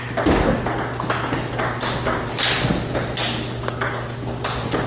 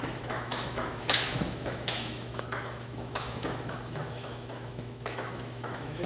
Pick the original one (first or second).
first